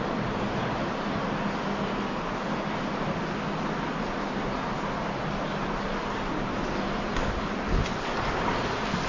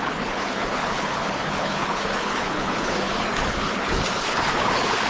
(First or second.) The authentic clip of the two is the first